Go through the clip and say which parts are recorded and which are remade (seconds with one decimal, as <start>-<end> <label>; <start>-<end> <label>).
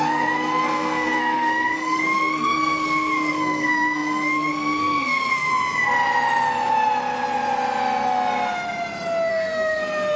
0.0-5.5 remade; 5.5-9.3 recorded; 9.3-10.2 remade